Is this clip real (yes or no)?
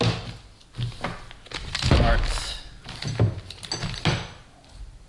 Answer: yes